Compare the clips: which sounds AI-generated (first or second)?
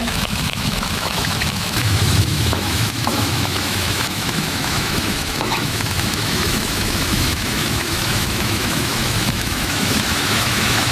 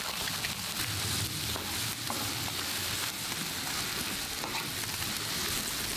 first